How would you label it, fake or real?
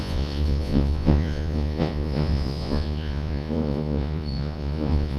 fake